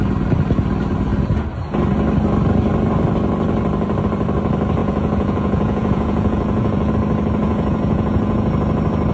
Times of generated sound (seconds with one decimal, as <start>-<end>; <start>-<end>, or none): 4.8-6.9; 7.4-8.5